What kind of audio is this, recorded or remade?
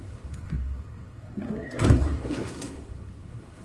remade